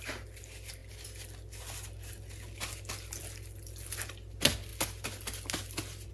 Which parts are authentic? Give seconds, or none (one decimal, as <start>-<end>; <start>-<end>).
0.0-6.1